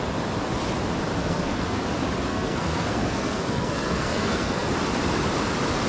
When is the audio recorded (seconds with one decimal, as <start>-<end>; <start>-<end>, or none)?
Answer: 0.0-1.2; 1.8-2.3; 4.7-5.9